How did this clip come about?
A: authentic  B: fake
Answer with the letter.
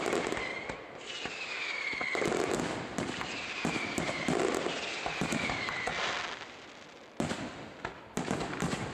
A